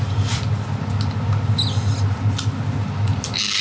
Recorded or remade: recorded